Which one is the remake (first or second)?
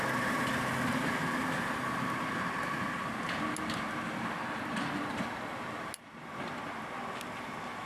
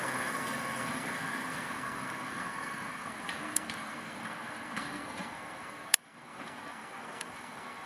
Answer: second